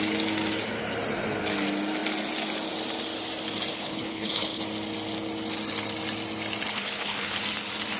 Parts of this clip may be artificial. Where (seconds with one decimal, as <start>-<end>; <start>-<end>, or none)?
3.7-4.6; 6.7-7.4